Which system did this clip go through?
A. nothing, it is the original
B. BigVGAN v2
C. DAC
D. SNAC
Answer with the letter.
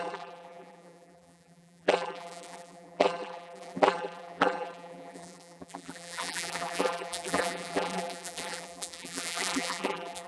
B